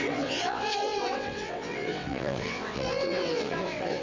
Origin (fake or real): fake